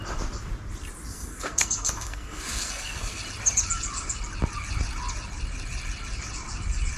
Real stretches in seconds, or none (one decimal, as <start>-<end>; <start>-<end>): 0.0-1.1; 3.2-7.0